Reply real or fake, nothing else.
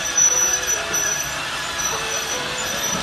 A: fake